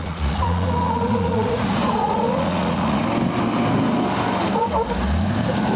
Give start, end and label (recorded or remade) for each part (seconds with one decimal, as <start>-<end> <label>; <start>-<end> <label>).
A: 0.0-3.0 remade; 3.0-5.8 recorded